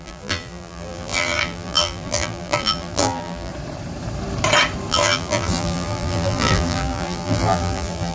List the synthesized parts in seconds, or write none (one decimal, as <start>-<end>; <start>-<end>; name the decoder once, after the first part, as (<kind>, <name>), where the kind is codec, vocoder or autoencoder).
0.0-3.5 (vocoder, BigVGAN v2); 4.9-8.1